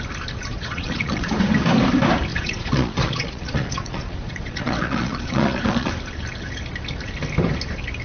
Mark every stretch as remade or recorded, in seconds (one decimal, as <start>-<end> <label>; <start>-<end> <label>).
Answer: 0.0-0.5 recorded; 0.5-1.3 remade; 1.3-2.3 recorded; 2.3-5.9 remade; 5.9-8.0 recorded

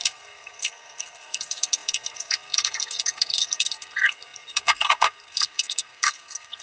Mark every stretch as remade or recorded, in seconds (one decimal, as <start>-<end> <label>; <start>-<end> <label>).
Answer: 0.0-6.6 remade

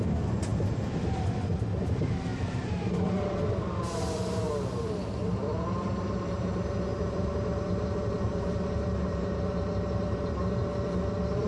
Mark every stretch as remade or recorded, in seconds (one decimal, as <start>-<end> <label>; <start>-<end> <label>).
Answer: 0.0-2.3 recorded; 2.3-3.5 remade; 3.5-6.9 recorded; 6.9-10.3 remade; 10.3-11.5 recorded

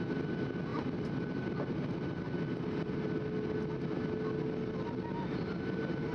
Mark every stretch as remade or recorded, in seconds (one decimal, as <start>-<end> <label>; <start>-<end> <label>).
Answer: 0.0-6.1 recorded

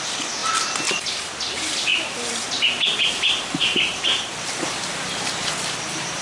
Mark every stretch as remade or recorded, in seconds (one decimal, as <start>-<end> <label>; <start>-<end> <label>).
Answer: 0.0-0.4 remade; 0.4-0.9 recorded; 0.9-6.2 remade